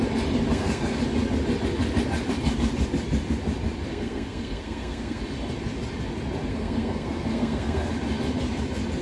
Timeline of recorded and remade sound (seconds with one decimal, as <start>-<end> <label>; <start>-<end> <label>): 0.0-0.5 recorded; 0.5-1.0 remade; 1.0-3.9 recorded; 3.9-5.2 remade; 5.2-6.5 recorded; 6.5-7.9 remade; 7.9-9.0 recorded